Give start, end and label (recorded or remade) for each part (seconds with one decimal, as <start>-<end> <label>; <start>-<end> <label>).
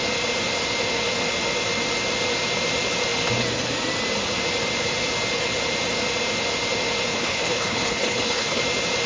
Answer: 0.0-7.1 recorded; 7.1-8.6 remade; 8.6-9.1 recorded